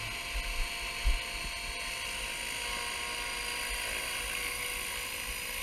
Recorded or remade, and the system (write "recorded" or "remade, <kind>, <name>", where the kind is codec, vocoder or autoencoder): recorded